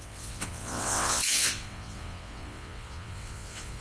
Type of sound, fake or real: fake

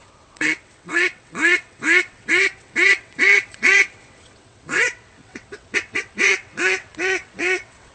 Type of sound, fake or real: fake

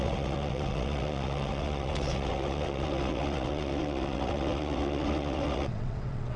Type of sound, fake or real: fake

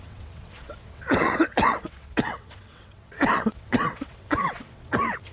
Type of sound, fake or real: fake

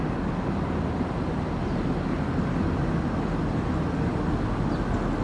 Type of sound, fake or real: real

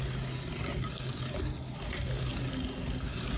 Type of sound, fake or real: real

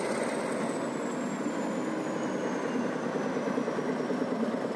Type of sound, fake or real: real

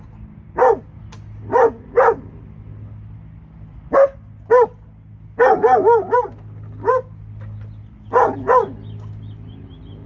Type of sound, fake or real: real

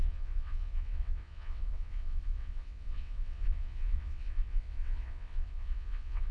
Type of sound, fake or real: fake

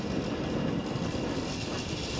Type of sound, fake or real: real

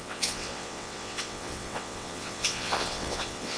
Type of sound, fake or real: fake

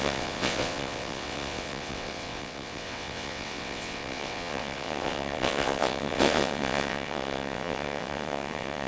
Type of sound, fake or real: fake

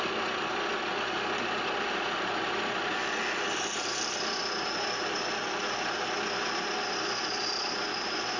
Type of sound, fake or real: real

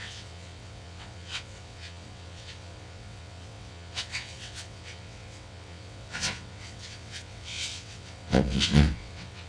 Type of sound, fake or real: fake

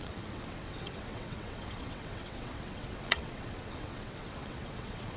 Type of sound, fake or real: fake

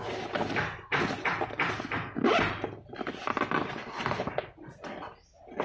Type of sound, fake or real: real